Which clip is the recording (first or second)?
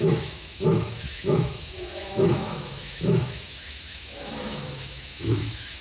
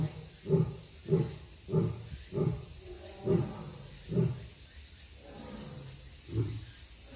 second